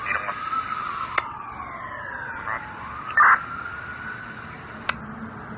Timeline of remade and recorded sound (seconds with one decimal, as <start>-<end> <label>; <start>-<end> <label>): 0.0-5.6 recorded